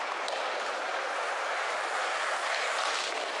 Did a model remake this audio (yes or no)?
no